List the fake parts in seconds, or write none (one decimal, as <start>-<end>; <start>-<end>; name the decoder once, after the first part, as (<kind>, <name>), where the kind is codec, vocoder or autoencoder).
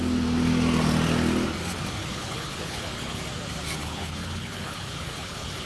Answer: 2.0-3.2 (codec, HILCodec); 3.8-5.7